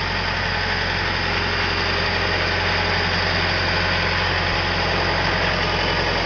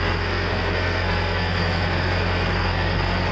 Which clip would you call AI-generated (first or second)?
second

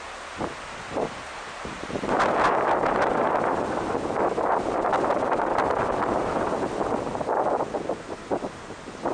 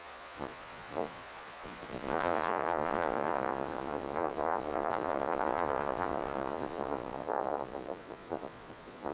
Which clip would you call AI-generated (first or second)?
second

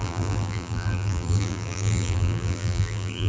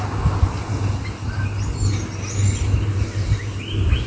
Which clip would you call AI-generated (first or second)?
first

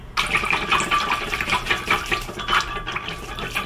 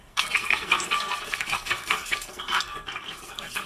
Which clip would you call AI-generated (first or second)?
second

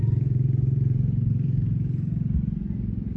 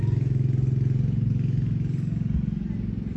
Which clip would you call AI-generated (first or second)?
first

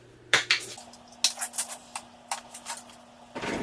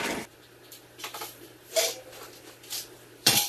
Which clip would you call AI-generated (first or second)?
second